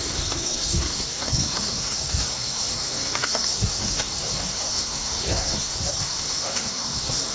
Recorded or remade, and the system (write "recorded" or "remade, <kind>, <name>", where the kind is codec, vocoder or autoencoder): remade, codec, SNAC